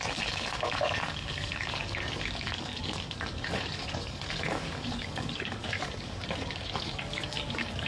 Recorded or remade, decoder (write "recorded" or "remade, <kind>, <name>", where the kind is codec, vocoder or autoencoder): remade, codec, DAC